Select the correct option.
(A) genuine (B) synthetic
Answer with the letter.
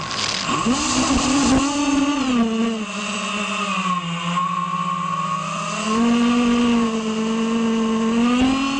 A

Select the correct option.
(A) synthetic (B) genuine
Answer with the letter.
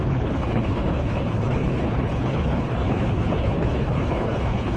A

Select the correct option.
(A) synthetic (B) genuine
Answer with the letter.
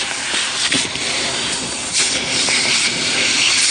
B